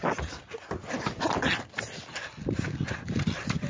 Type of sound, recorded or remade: recorded